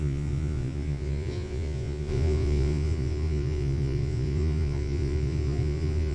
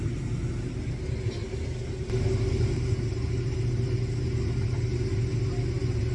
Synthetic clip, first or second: first